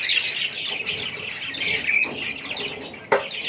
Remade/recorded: recorded